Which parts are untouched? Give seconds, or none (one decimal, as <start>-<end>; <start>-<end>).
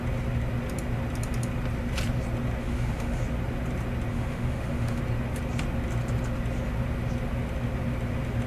0.0-2.6; 3.2-4.1; 5.0-8.5